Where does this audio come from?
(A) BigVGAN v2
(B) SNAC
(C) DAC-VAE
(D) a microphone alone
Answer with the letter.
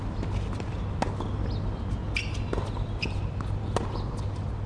D